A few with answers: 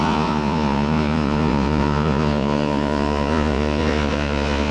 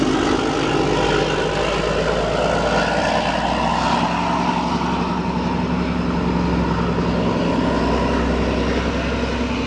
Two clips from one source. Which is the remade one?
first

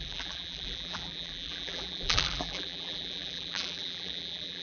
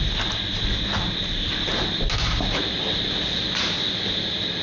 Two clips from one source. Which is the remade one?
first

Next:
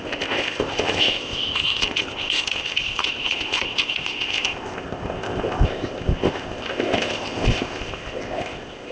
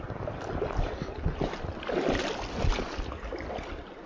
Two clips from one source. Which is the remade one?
first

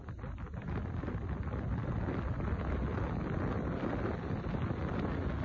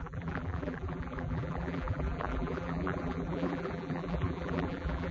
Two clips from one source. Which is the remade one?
second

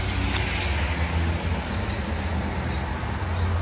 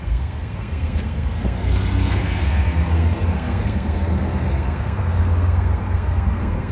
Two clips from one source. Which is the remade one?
second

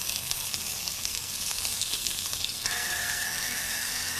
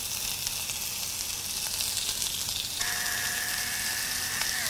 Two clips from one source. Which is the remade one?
first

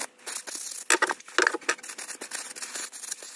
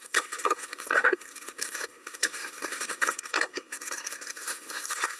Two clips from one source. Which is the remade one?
second